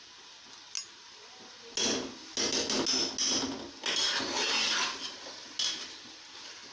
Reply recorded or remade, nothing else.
recorded